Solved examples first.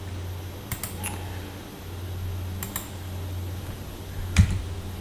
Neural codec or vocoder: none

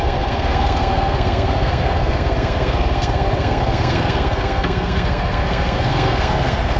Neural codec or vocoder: codec, SNAC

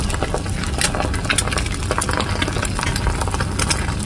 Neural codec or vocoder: none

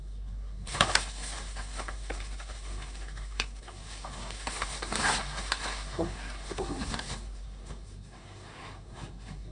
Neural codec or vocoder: codec, SNAC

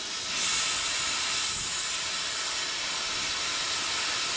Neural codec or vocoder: none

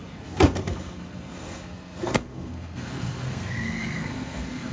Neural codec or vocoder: codec, SNAC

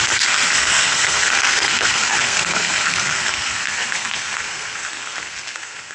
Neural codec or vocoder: codec, SNAC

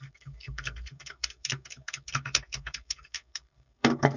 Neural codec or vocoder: codec, SNAC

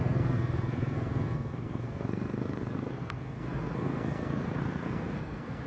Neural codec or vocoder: codec, SNAC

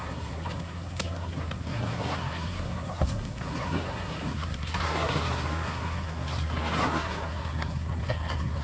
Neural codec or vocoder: codec, SNAC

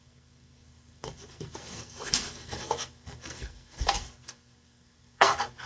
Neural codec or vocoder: codec, SNAC